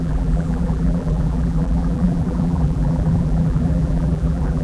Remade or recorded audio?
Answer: remade